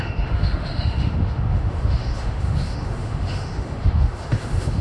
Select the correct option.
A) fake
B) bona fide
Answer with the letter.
A